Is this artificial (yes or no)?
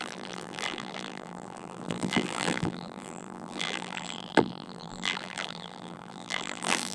yes